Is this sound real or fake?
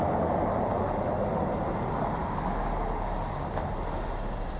real